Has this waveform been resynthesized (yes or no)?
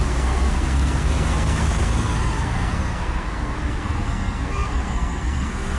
yes